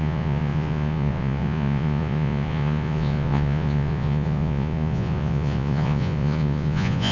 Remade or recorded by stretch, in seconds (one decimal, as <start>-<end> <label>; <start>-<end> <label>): 0.0-7.1 remade